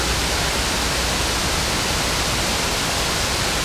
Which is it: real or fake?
real